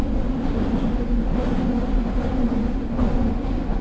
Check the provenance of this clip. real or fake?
real